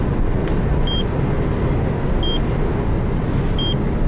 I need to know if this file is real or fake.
real